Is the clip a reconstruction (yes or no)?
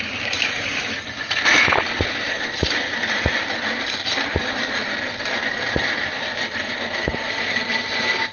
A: yes